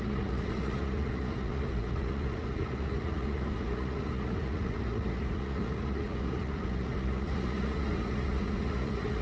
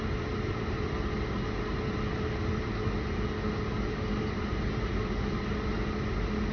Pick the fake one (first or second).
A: first